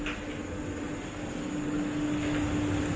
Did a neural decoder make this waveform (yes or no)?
no